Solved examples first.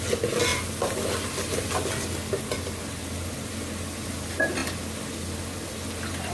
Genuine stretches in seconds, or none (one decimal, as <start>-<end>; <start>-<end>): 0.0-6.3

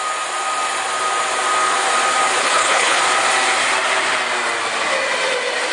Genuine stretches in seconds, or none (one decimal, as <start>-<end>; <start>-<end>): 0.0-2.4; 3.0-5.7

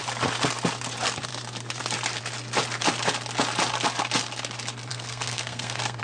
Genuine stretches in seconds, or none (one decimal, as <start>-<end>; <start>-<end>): 0.0-4.9

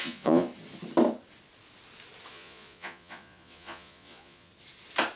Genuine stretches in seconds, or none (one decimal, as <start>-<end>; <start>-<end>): 0.5-2.3; 4.5-5.2